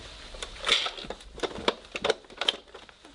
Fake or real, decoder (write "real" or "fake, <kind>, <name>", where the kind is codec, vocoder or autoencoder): real